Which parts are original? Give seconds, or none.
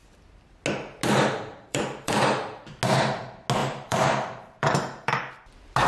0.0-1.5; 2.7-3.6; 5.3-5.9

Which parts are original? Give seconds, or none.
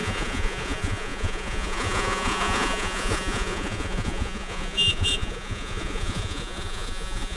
none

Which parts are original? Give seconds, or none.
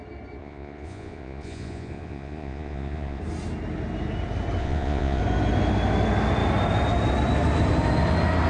0.0-0.4; 3.2-4.6; 5.2-8.5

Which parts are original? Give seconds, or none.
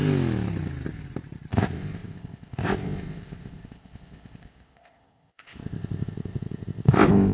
0.0-1.5